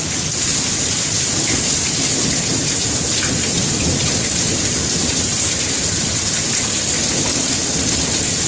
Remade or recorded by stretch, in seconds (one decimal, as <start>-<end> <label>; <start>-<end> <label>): 0.0-8.5 recorded